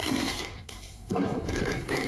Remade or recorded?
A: remade